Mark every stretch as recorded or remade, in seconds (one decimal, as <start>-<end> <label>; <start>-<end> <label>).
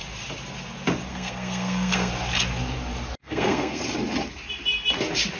0.0-1.1 recorded; 1.1-2.1 remade; 2.1-3.2 recorded; 3.2-3.8 remade; 3.8-5.4 recorded